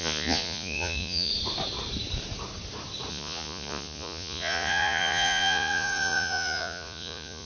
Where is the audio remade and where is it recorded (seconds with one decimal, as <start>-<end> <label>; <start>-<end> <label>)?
0.0-1.3 remade; 1.3-3.1 recorded; 3.1-7.4 remade